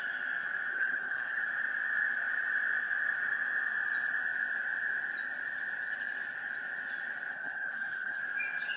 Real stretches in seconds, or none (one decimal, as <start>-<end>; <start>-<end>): 0.0-0.7; 1.4-7.3; 8.2-8.8